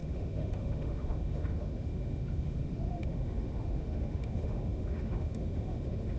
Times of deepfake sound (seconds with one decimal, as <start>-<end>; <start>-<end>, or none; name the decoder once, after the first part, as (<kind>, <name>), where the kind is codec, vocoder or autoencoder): 0.0-6.2 (autoencoder, DAC-VAE)